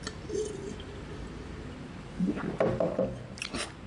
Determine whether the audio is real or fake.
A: real